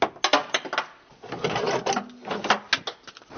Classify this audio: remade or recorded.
recorded